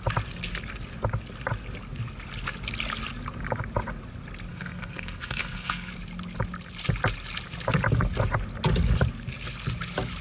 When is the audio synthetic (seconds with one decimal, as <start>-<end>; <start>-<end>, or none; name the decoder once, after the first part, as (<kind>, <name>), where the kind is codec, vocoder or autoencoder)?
4.5-5.9 (codec, SNAC)